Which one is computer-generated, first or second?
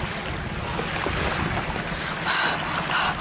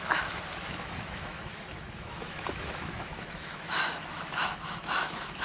second